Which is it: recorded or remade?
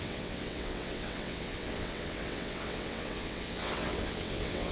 remade